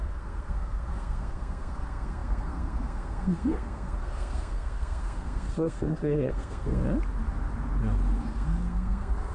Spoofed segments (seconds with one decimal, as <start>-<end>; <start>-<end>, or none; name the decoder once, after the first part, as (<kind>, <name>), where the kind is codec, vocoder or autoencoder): 0.0-6.8 (codec, SNAC); 8.2-9.3